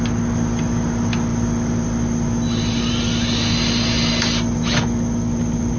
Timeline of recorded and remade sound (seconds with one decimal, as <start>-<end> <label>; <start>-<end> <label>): 0.0-5.8 recorded